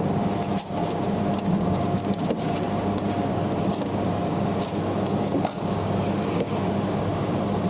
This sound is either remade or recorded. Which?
remade